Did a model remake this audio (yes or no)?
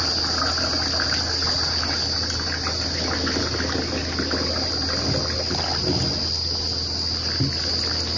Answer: no